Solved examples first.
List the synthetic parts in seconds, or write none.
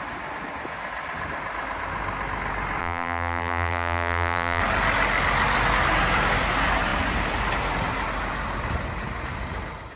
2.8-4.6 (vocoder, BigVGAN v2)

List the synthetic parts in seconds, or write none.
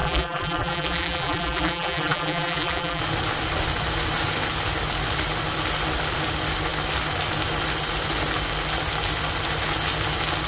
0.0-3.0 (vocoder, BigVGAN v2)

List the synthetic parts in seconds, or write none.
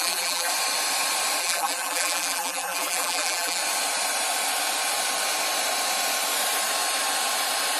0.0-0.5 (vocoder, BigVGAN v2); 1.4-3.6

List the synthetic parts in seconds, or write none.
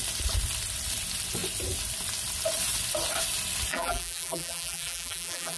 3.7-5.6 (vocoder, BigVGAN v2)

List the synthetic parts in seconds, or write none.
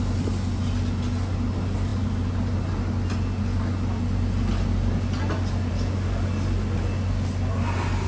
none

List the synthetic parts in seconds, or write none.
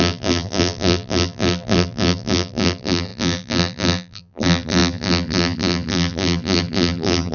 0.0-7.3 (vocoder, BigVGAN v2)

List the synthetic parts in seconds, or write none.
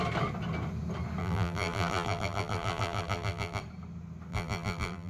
1.2-3.6 (vocoder, BigVGAN v2); 4.3-5.1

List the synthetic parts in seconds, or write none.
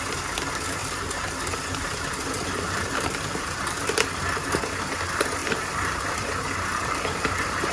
0.8-4.2 (vocoder, BigVGAN v2); 5.4-7.7